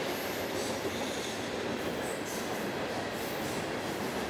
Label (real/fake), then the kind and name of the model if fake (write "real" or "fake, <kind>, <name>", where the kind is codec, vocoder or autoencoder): real